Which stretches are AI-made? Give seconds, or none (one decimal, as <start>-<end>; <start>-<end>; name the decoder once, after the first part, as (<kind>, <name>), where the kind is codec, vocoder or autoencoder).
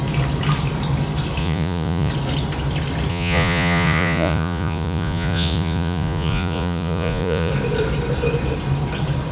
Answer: 1.4-2.1 (vocoder, Vocos); 3.1-7.5